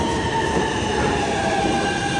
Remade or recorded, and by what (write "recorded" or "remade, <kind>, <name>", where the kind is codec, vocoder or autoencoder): remade, vocoder, BigVGAN v2